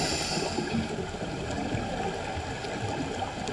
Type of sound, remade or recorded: remade